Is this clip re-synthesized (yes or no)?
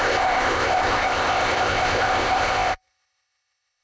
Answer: yes